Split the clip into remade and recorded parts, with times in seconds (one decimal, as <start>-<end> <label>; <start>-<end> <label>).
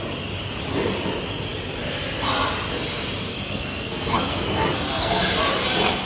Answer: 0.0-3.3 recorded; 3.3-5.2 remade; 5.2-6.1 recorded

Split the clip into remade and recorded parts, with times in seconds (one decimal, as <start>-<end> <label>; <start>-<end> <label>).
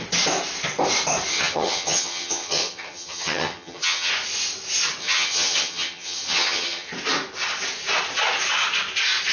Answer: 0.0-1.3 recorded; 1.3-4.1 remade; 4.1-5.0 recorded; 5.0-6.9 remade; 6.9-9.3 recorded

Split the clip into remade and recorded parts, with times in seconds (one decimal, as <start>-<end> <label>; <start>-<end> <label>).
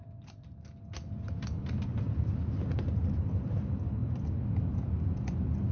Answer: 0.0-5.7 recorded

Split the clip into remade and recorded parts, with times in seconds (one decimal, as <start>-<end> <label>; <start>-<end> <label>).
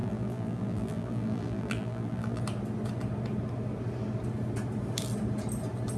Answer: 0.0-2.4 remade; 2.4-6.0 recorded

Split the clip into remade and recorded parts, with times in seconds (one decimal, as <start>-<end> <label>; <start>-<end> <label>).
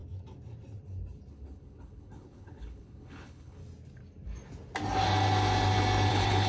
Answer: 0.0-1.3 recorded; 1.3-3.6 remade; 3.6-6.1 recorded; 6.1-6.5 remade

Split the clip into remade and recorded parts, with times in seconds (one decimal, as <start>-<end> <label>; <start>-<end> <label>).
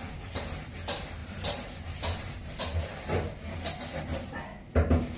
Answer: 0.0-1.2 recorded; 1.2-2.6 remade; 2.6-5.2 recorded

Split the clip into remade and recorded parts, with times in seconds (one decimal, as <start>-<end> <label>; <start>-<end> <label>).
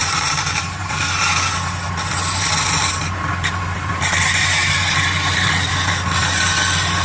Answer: 0.0-1.0 remade; 1.0-7.0 recorded